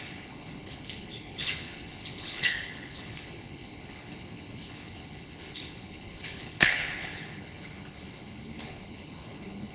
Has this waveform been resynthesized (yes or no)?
yes